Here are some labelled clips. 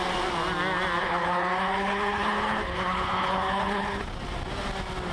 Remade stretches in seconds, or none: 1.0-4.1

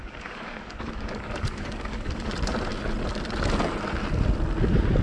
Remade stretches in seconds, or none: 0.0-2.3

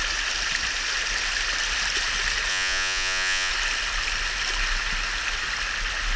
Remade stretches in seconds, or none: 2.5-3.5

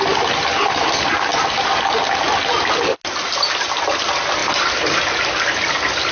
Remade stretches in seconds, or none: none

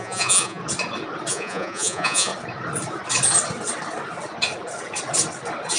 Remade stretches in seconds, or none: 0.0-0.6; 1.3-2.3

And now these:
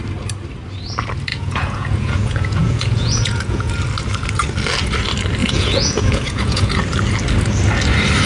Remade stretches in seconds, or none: 1.3-3.7; 5.4-6.7

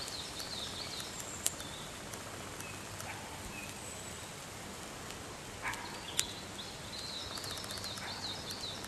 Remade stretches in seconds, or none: none